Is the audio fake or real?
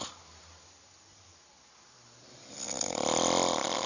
real